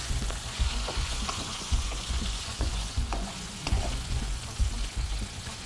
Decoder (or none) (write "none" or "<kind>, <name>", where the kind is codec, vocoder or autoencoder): vocoder, Vocos